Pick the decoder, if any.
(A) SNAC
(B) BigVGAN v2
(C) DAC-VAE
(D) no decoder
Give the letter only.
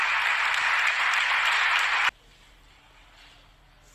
D